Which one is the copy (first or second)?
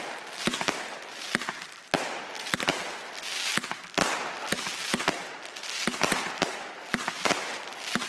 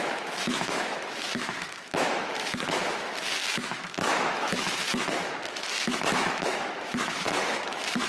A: second